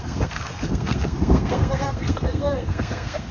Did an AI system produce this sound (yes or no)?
yes